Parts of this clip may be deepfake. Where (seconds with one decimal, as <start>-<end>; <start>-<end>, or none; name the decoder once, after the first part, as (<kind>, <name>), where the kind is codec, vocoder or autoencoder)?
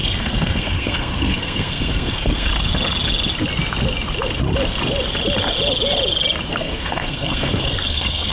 0.0-2.5 (codec, SNAC); 6.6-8.3